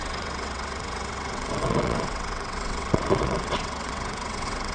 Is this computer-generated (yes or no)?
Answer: yes